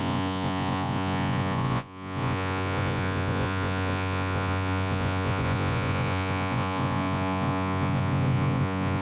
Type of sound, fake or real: fake